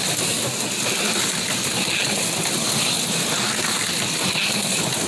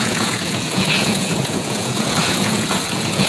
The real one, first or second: first